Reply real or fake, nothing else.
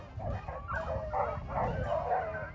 real